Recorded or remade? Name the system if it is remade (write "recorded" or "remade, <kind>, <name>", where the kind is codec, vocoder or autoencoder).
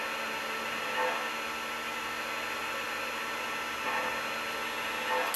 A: recorded